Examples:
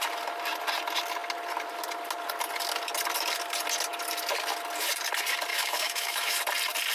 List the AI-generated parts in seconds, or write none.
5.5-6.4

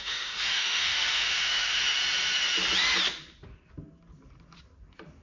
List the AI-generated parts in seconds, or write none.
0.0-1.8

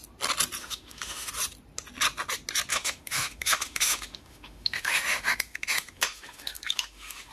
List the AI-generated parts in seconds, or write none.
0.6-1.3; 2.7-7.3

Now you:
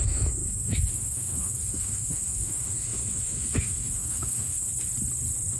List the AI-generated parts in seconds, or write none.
0.0-4.7

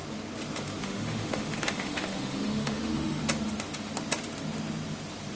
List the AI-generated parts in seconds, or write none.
0.8-3.2

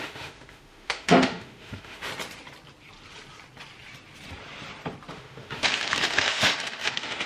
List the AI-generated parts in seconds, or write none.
0.0-2.1; 5.1-7.3